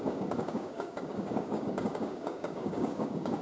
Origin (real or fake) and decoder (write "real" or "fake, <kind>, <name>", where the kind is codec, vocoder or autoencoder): fake, codec, DAC